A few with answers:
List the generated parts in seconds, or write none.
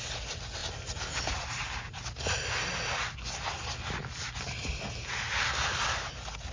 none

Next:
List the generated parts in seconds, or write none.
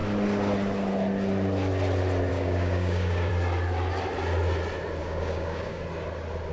2.3-3.3 (codec, DAC); 5.0-5.8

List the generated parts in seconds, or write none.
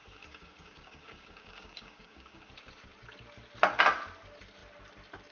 0.0-2.5 (codec, DAC)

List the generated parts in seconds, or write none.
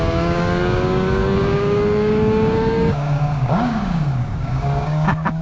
0.0-5.4 (codec, DAC)